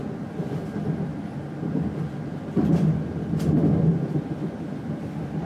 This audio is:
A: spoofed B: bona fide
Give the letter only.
B